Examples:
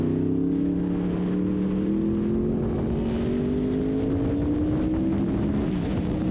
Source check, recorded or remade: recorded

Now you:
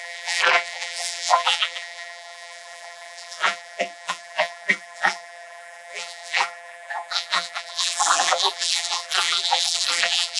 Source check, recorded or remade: remade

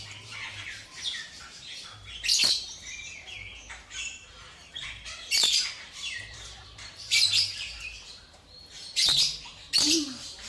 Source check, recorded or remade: remade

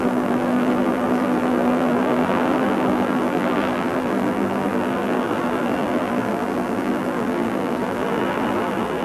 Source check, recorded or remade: remade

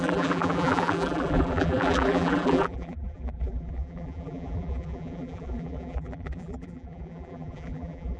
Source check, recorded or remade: remade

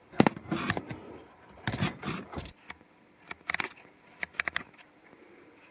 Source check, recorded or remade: recorded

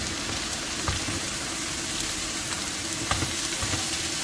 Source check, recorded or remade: recorded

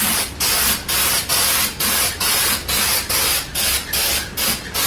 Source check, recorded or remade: recorded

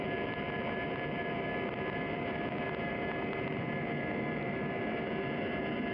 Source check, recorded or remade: remade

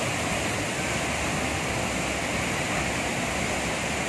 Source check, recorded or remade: recorded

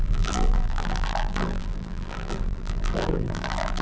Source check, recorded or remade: remade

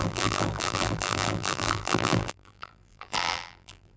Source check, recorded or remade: remade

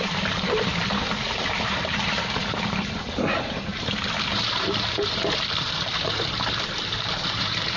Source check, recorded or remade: remade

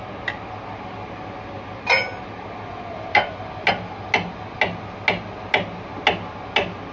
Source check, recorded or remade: recorded